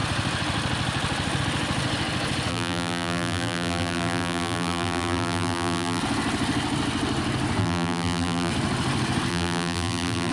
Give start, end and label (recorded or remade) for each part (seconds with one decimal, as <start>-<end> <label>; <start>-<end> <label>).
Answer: 0.0-2.5 recorded; 2.5-6.0 remade; 6.0-7.6 recorded; 7.6-8.5 remade; 8.5-9.3 recorded; 9.3-10.3 remade